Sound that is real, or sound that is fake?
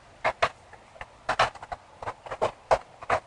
real